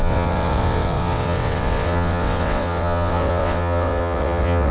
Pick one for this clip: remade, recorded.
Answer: remade